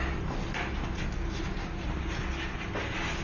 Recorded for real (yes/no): yes